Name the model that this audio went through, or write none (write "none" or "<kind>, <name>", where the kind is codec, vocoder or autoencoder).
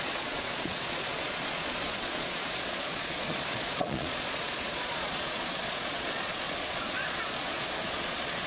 vocoder, Vocos